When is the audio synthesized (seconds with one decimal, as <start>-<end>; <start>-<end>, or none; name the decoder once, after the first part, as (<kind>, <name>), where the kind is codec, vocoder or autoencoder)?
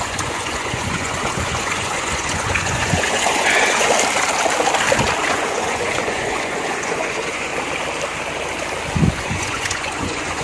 0.0-3.9 (vocoder, Vocos); 5.2-7.5; 8.9-10.4